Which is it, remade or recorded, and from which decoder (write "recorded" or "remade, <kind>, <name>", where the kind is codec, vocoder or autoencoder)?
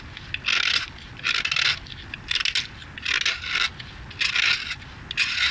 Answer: recorded